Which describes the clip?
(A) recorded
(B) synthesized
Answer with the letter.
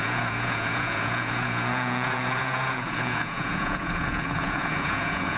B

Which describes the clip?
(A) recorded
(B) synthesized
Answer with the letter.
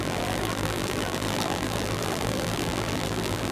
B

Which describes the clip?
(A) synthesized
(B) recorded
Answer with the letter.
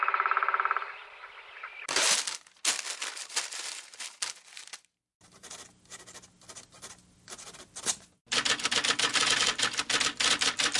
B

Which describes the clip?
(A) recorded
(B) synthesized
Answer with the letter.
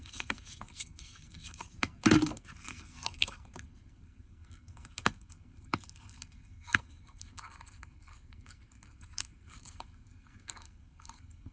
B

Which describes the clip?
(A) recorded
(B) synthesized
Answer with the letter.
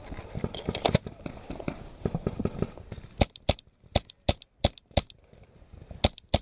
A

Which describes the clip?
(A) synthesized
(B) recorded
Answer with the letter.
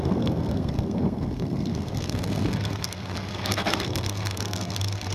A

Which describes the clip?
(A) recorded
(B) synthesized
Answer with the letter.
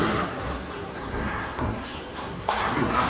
B